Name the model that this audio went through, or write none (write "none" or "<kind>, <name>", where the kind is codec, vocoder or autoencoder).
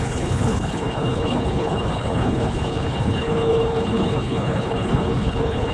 codec, HILCodec